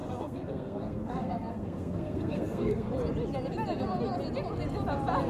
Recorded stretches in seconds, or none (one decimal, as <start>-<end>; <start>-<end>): 2.9-5.3